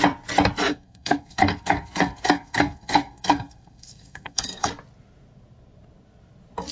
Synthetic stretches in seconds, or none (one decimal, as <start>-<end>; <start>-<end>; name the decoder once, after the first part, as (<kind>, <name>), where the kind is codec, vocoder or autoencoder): 0.7-4.7 (codec, SNAC)